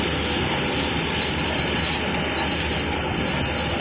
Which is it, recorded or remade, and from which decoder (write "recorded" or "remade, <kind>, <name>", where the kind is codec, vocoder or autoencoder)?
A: recorded